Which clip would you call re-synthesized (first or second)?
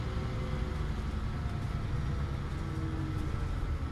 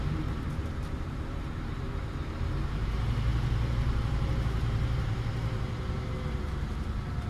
second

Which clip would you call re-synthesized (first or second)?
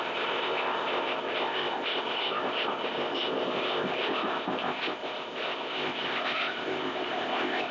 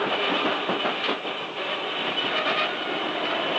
first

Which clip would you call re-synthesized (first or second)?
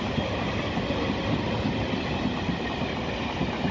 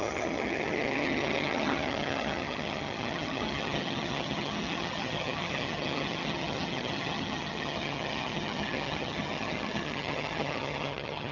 second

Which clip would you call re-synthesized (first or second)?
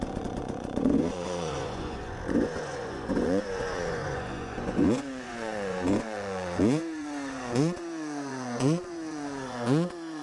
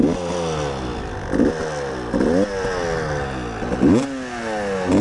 first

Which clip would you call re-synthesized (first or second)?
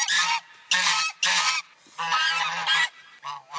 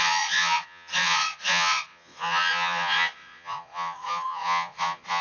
second